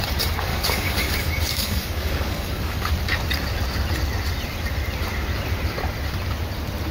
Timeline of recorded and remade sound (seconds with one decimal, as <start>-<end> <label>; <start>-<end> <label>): 0.0-0.5 recorded; 0.5-2.9 remade; 2.9-6.9 recorded